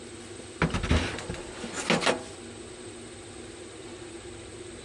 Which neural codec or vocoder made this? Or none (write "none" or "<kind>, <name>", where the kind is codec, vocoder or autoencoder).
none